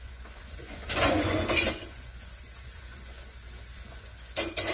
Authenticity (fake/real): fake